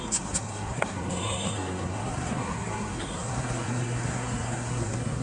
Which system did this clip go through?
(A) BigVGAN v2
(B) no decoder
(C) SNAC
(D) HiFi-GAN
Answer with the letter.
C